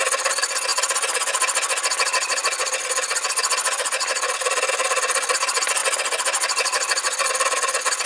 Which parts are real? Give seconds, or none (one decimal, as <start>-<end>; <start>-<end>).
0.0-8.1